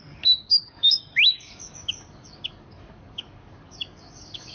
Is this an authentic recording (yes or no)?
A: no